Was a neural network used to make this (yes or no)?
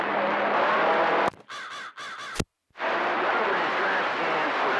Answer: no